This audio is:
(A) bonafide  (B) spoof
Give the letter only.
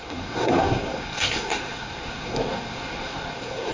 B